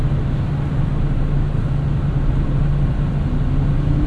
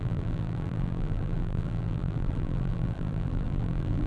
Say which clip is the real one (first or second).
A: first